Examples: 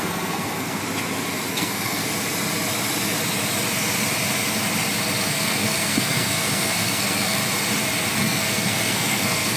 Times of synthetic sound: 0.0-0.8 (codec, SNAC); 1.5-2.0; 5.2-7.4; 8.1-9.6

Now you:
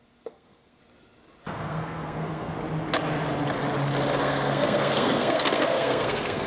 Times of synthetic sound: 0.0-0.8 (codec, SNAC); 1.5-2.5; 4.2-6.5

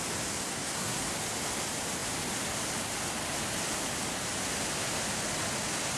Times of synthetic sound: 0.5-1.1 (codec, SNAC)

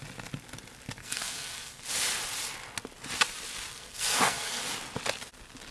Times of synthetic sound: 1.0-1.8 (codec, SNAC); 3.7-4.6